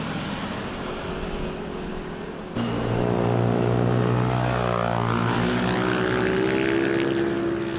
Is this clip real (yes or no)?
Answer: yes